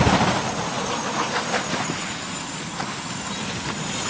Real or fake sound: real